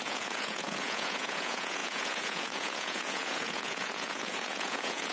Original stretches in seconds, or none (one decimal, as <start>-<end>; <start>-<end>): none